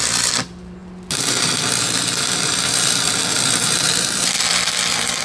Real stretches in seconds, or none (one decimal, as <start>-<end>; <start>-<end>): 0.8-1.4